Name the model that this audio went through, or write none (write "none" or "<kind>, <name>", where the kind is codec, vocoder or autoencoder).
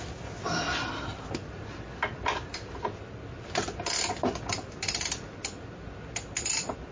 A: none